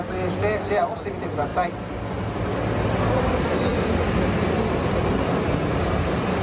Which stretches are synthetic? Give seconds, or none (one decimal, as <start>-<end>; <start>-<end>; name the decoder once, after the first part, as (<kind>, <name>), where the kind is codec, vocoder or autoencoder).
none